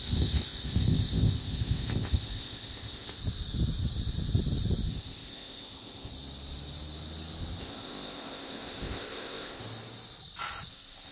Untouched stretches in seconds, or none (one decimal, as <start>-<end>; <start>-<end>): 3.2-4.9; 6.1-7.6; 9.6-10.7